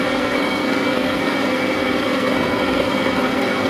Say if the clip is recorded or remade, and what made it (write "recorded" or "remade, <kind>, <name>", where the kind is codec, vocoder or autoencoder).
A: remade, codec, SNAC